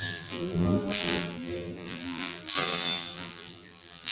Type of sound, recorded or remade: remade